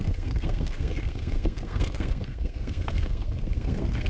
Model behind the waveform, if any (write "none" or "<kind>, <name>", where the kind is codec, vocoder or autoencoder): codec, SNAC